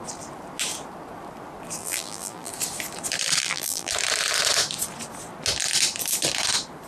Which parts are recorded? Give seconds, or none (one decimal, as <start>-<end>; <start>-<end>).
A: 0.0-1.8; 2.5-3.4; 3.9-6.9